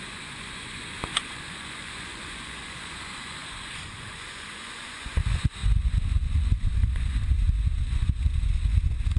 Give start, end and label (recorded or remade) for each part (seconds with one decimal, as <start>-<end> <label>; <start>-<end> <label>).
0.0-9.2 remade